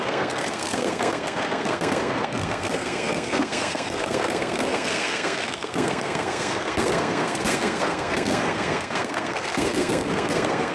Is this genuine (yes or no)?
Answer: no